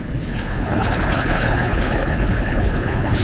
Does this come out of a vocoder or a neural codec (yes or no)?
yes